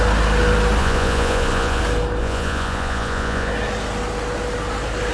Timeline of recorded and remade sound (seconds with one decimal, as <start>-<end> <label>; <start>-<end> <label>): 0.0-0.8 recorded; 0.8-1.8 remade; 1.8-2.2 recorded; 2.2-3.5 remade; 3.5-5.1 recorded